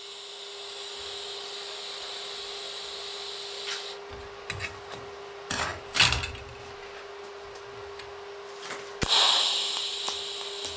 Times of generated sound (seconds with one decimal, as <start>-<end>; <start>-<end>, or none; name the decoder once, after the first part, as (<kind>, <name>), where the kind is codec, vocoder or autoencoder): none